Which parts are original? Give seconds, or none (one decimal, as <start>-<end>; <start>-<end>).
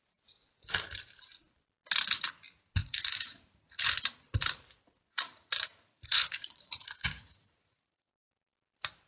0.0-2.8; 3.9-5.1; 8.1-9.1